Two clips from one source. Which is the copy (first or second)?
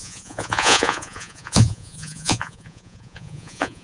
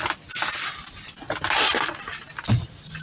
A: first